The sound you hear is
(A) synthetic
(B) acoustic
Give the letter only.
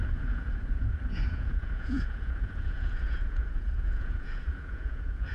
A